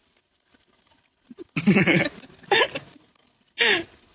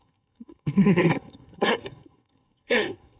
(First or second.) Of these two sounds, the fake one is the second